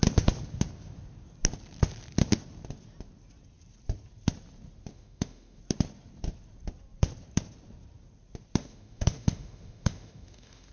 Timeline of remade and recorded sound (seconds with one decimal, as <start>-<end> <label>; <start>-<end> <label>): 0.0-4.9 recorded; 4.9-5.6 remade; 5.6-8.6 recorded; 8.6-10.7 remade